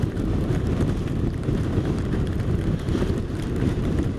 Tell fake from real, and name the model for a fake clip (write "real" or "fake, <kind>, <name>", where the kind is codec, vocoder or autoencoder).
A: fake, vocoder, BigVGAN v2